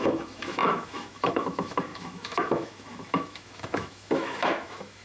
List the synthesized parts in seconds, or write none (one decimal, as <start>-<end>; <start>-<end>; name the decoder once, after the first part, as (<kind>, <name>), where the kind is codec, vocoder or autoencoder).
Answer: 0.0-5.0 (autoencoder, DAC-VAE)